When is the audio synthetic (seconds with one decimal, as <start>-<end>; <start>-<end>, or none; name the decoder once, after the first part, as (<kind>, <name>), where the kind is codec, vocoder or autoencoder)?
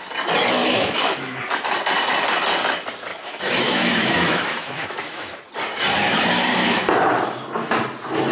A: 0.6-1.4 (autoencoder, DAC-VAE); 3.1-5.5